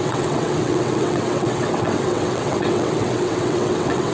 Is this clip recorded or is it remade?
remade